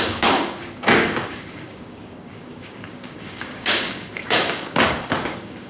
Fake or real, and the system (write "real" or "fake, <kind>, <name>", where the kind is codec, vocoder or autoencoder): fake, codec, DAC